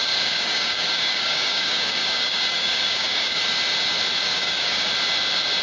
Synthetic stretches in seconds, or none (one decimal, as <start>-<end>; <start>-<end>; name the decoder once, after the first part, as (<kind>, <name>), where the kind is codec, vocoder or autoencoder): 0.0-3.4 (codec, DAC); 4.3-4.9